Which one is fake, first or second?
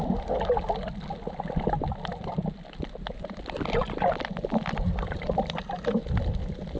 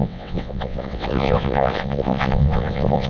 second